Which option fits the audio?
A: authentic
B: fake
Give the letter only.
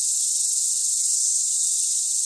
A